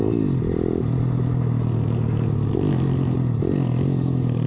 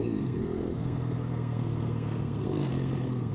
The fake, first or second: second